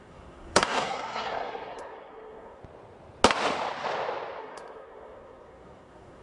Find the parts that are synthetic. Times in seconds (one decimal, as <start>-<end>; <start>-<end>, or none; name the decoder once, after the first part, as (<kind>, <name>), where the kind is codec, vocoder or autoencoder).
0.0-2.6 (codec, SNAC); 4.4-6.2